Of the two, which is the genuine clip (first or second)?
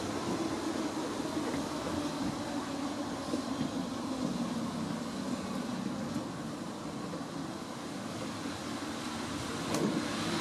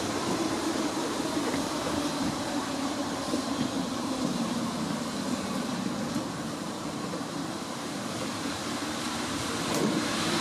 first